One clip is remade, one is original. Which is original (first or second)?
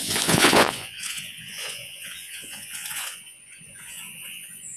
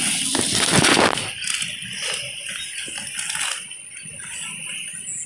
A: second